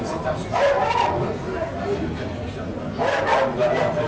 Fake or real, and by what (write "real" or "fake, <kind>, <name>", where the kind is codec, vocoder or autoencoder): real